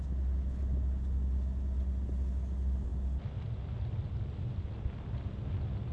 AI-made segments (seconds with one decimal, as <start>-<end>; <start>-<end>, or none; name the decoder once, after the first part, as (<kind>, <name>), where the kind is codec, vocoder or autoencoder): none